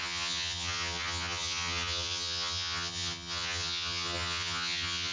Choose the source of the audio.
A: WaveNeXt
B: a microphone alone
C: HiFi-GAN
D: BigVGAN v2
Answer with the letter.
C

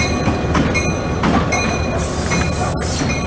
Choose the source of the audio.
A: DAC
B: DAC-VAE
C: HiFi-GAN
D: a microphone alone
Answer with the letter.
D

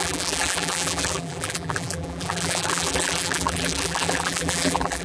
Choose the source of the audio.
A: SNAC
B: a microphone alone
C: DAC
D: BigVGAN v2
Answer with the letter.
D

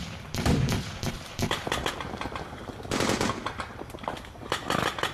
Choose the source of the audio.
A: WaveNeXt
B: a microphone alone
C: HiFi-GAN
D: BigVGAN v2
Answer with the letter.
D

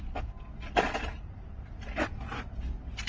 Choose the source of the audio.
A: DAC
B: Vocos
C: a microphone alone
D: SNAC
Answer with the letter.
C